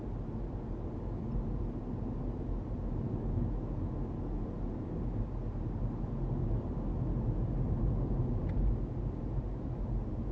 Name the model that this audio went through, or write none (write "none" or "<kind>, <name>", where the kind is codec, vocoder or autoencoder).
none